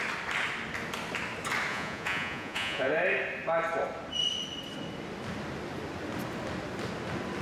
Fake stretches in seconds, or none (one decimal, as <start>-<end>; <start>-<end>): 1.7-2.9